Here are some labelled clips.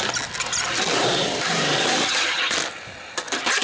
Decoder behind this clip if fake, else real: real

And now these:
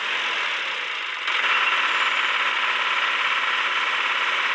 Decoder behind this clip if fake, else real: real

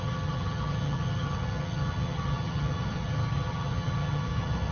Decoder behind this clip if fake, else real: fake, vocoder, HiFi-GAN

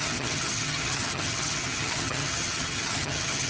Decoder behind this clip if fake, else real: fake, vocoder, HiFi-GAN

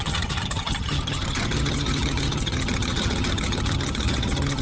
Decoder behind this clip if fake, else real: fake, vocoder, HiFi-GAN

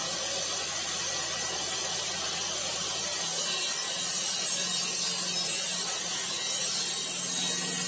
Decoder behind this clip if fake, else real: real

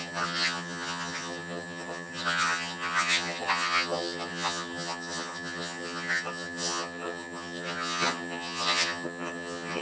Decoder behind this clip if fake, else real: fake, vocoder, HiFi-GAN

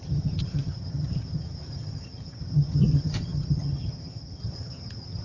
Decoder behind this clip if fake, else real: fake, vocoder, HiFi-GAN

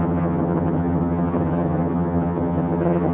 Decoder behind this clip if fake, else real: fake, vocoder, HiFi-GAN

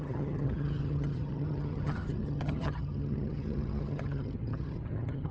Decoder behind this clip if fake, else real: fake, vocoder, HiFi-GAN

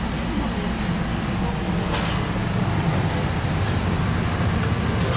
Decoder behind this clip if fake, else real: real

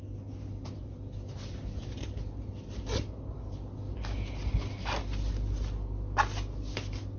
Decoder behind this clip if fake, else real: real